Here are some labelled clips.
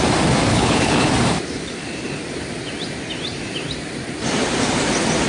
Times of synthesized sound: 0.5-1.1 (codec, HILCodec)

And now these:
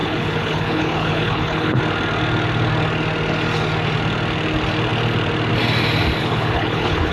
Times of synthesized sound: 0.0-1.8 (codec, HILCodec); 6.2-7.1

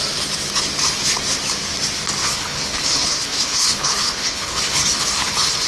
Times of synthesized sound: 2.2-5.7 (codec, HILCodec)

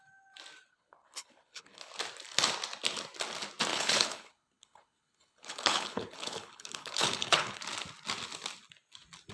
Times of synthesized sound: 0.7-1.9 (codec, HILCodec); 3.7-7.6

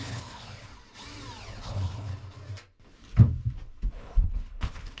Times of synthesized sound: 0.0-0.7 (codec, HILCodec); 1.6-2.1; 3.9-5.0

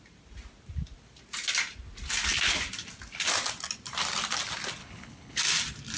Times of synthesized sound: 4.8-5.4 (codec, HILCodec)

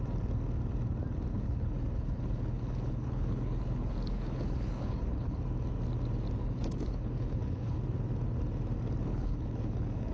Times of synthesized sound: 1.3-5.4 (codec, HILCodec); 6.4-7.8; 9.1-10.1

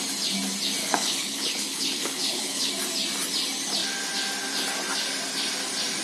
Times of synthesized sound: 0.8-2.7 (codec, HILCodec)